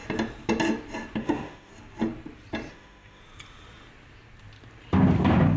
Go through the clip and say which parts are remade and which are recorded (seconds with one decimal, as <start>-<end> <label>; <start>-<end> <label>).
0.0-1.2 recorded; 1.2-1.7 remade; 1.7-2.7 recorded; 2.7-3.2 remade; 3.2-5.6 recorded